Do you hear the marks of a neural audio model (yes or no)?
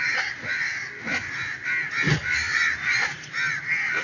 no